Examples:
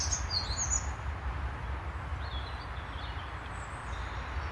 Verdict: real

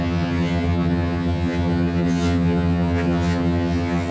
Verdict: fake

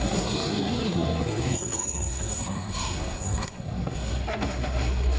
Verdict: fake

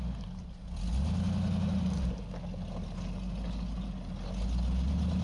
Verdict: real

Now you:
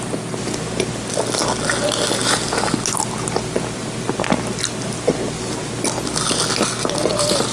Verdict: real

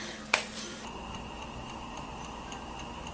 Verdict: fake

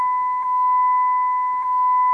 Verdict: real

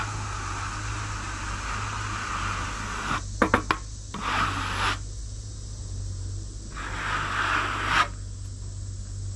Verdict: real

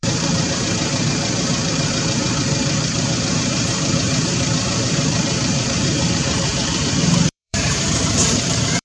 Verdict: fake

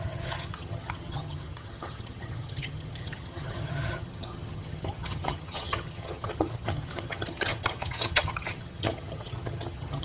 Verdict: fake